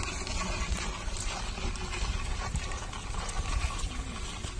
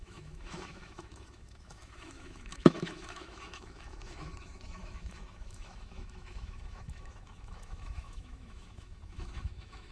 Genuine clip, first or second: first